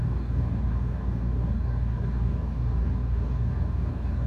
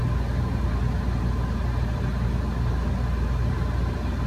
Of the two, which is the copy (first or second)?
first